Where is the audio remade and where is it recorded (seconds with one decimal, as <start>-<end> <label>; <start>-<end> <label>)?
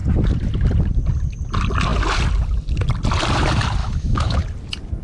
0.0-3.8 recorded; 3.8-4.4 remade; 4.4-5.0 recorded